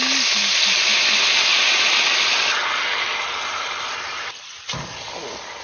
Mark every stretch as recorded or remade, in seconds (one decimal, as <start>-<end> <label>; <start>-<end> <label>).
0.0-1.5 remade; 1.5-3.1 recorded; 3.1-4.7 remade; 4.7-5.6 recorded